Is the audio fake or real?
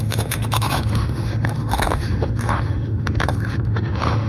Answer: fake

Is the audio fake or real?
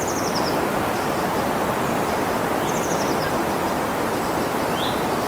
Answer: real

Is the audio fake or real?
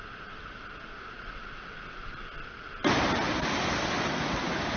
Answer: real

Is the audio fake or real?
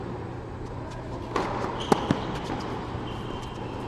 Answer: real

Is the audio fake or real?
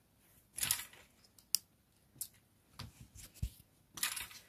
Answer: real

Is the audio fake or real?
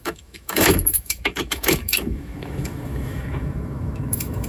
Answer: fake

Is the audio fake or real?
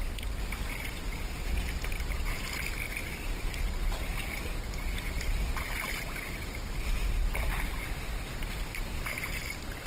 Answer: real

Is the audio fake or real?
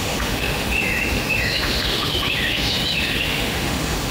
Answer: fake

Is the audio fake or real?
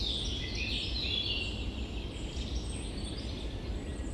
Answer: real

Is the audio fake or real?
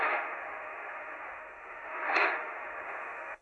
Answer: fake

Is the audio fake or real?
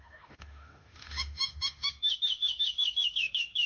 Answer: fake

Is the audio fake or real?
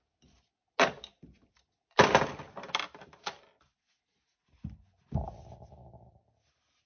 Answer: real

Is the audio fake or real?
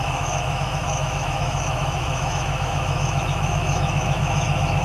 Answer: fake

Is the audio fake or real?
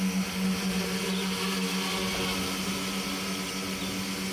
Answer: real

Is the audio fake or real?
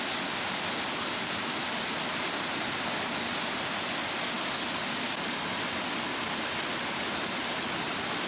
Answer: real